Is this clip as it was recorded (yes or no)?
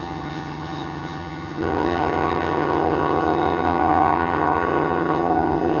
no